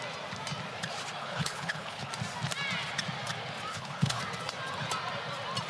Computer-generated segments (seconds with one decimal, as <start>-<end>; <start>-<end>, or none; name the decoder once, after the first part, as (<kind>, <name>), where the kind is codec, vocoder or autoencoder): 1.2-2.1 (codec, HILCodec); 3.7-4.2

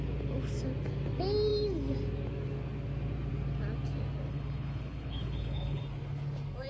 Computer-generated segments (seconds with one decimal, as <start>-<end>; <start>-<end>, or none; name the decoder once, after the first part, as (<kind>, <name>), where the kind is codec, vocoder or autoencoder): 4.3-5.8 (codec, HILCodec)

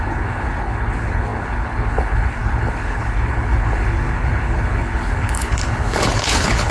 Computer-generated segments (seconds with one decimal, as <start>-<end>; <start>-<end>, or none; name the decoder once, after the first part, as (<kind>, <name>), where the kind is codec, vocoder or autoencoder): 0.0-6.7 (codec, HILCodec)

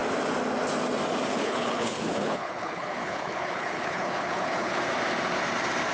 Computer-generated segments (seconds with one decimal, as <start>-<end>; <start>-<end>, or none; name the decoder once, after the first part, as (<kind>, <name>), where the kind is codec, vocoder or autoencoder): 1.3-4.8 (codec, HILCodec)

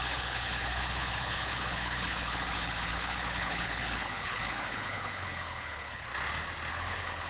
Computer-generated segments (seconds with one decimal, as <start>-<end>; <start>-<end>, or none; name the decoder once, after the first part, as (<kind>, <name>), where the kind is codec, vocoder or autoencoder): 0.0-6.1 (codec, HILCodec); 6.7-7.3